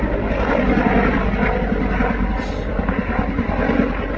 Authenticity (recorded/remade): recorded